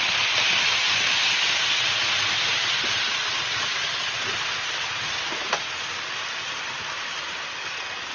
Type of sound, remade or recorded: recorded